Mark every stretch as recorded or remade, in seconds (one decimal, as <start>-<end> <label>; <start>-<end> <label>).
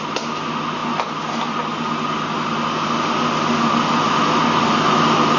0.0-5.4 recorded